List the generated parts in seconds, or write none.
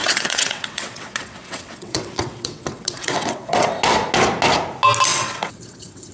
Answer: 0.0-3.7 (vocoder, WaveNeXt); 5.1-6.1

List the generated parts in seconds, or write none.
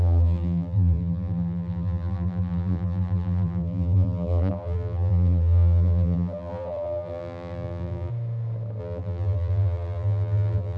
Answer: 0.0-8.1 (vocoder, BigVGAN v2); 8.8-10.8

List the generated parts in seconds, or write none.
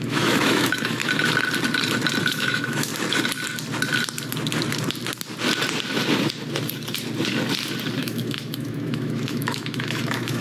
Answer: 0.0-1.0 (autoencoder, DAC-VAE); 2.2-2.9; 8.0-10.4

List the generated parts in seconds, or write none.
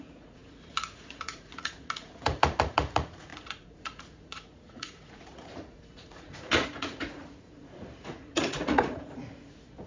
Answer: 0.0-9.9 (vocoder, Vocos)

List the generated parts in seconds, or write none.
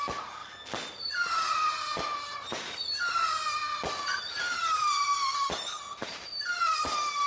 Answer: 0.0-0.4 (vocoder, BigVGAN v2); 1.0-3.6; 4.4-5.0; 5.9-7.3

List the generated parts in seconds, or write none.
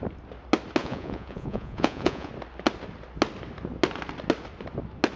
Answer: 0.8-2.3 (vocoder, Vocos)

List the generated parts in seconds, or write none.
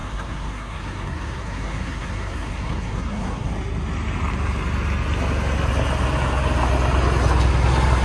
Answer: 0.0-3.5 (codec, SNAC)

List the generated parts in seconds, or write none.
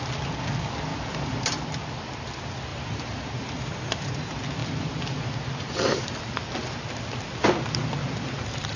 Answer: 0.9-1.4 (vocoder, BigVGAN v2); 2.7-3.2; 4.6-6.2; 8.0-8.8